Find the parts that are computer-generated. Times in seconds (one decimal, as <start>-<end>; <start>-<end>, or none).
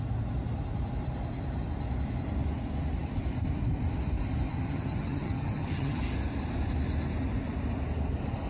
4.5-6.0